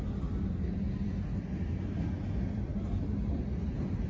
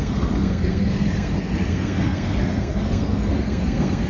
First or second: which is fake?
second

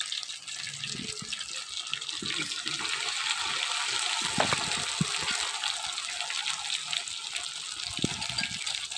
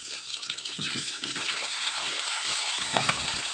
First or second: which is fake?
second